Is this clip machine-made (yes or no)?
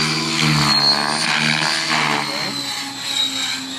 no